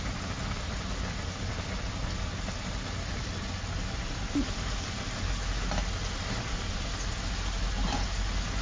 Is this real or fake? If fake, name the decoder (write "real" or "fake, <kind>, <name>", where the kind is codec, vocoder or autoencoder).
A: real